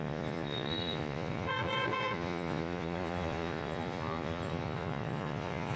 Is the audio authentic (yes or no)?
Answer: no